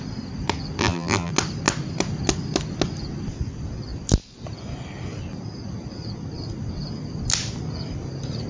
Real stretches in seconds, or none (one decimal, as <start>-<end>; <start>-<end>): 0.0-0.8; 1.3-8.5